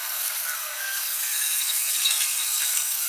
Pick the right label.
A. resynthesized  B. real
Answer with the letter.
A